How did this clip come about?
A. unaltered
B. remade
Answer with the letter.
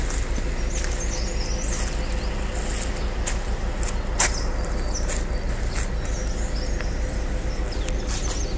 A